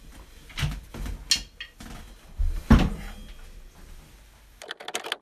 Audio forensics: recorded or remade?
recorded